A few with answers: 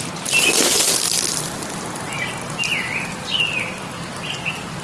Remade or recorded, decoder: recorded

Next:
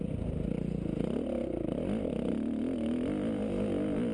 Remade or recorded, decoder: recorded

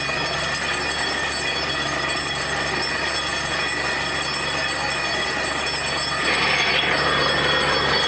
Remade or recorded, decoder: recorded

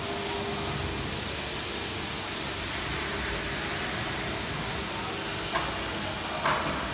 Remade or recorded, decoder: recorded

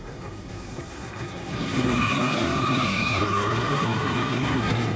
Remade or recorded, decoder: remade, codec, SNAC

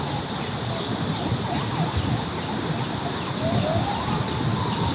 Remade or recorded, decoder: recorded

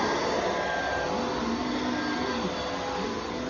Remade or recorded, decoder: recorded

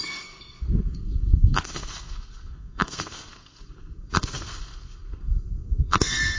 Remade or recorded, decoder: remade, codec, SNAC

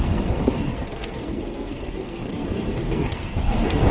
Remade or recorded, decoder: remade, codec, SNAC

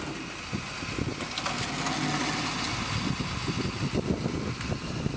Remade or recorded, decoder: recorded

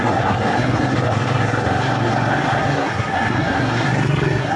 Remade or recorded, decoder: remade, codec, SNAC